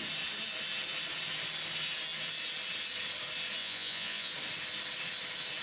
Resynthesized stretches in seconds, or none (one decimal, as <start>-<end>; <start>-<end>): 3.6-4.3